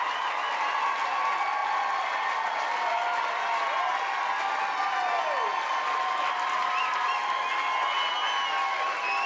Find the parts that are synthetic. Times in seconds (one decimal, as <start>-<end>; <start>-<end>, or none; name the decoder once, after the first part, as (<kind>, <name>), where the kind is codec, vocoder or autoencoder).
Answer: none